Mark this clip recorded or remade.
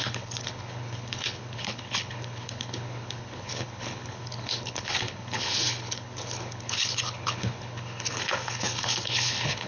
remade